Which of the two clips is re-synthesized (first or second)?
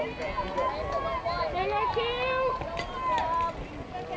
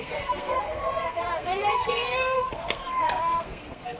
second